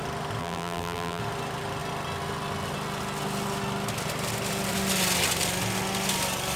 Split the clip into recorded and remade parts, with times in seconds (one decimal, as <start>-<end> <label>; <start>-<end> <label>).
0.0-0.4 recorded; 0.4-1.2 remade; 1.2-6.6 recorded